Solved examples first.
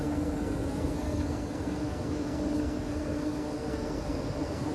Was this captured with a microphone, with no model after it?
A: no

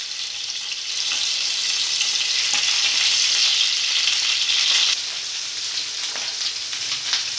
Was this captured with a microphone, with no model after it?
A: yes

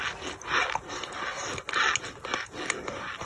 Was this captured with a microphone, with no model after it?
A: yes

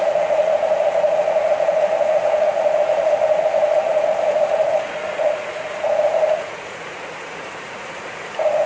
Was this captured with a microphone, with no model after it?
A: no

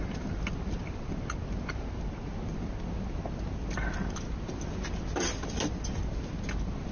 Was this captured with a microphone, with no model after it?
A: yes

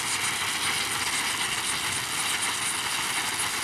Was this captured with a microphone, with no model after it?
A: yes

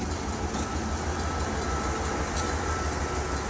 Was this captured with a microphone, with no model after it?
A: yes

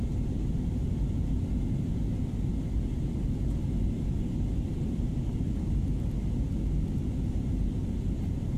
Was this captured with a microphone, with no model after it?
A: yes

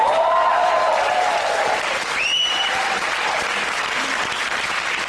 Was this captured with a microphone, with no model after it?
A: no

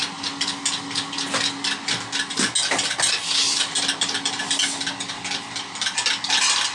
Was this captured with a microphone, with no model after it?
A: yes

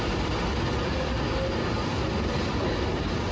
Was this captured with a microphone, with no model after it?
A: yes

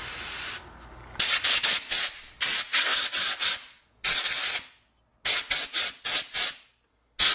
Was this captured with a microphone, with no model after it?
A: yes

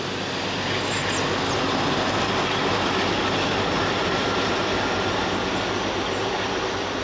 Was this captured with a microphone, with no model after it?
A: yes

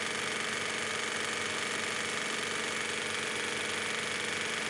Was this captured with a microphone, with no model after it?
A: yes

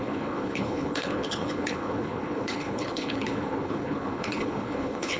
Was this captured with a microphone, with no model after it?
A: no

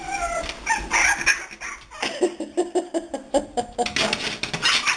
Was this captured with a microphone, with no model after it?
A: yes